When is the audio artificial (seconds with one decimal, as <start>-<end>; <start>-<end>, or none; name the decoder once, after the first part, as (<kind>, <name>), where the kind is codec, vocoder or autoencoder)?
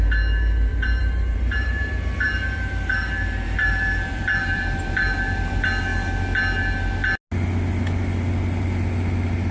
0.7-5.4 (vocoder, BigVGAN v2)